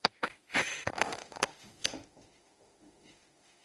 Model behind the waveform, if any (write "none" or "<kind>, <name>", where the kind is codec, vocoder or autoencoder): autoencoder, DAC-VAE